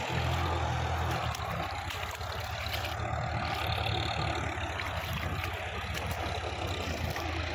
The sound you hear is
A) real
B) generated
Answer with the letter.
A